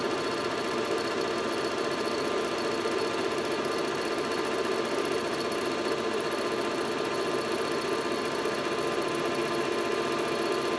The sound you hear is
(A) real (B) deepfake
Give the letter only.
A